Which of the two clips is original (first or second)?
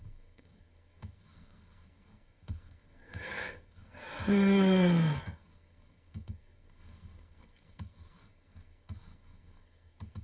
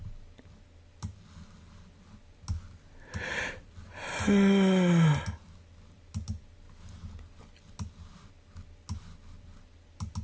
second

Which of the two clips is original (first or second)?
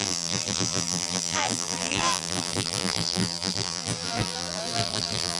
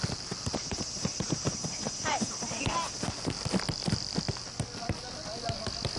second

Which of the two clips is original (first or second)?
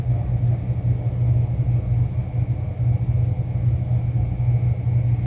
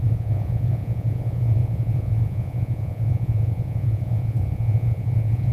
first